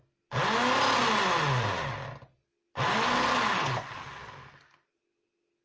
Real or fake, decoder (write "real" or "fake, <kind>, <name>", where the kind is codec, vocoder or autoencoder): real